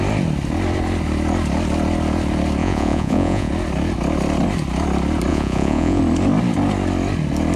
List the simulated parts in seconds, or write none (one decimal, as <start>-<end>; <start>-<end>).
2.6-3.5; 5.3-6.0